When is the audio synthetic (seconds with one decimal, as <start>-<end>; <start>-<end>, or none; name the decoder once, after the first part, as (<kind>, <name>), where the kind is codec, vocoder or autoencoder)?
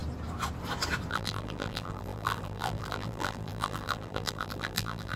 1.1-5.2 (vocoder, BigVGAN v2)